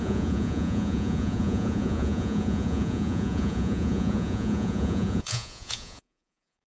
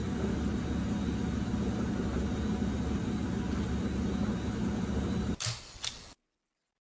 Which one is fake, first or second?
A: first